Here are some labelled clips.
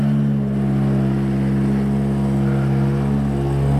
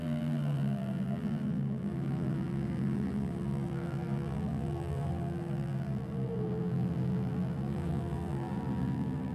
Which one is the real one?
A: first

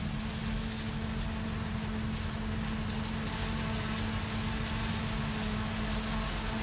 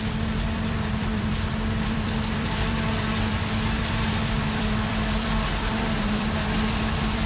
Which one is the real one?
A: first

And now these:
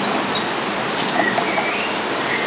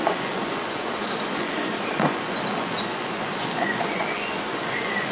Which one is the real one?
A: first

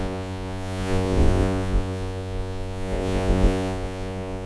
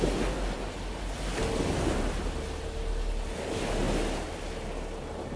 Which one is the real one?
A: second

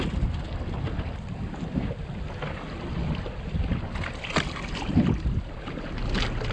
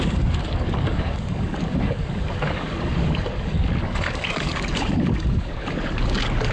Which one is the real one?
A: first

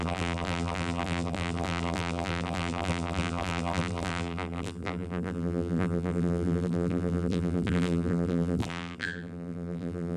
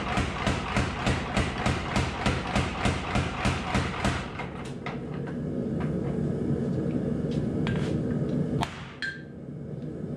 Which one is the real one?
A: second